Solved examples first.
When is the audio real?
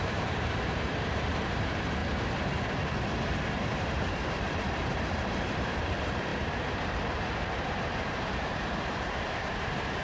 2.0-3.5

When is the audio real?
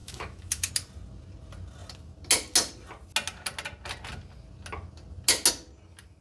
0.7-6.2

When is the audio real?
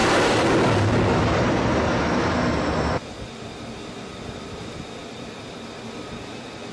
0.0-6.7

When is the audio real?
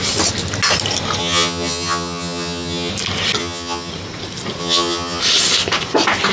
0.0-1.2; 2.9-3.4; 3.9-4.6; 5.2-6.3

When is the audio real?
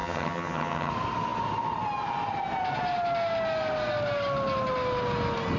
0.9-5.6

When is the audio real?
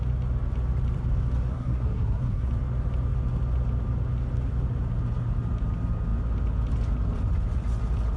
0.0-1.5; 2.5-8.2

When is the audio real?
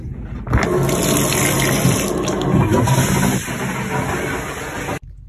0.0-5.3